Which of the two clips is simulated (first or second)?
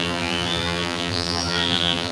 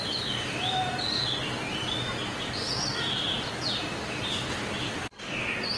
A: first